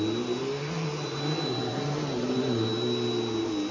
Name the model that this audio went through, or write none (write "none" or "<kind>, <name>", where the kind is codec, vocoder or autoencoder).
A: none